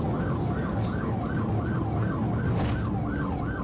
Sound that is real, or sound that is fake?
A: real